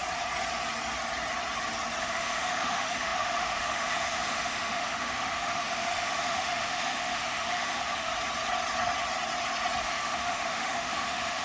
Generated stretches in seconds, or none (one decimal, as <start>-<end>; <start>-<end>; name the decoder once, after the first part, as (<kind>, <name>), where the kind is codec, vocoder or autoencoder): 2.0-8.1 (autoencoder, DAC-VAE); 9.8-11.4